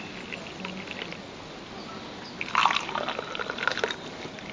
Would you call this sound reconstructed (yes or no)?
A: no